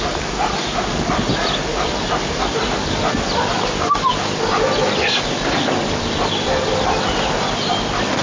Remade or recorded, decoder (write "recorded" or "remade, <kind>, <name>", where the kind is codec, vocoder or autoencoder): recorded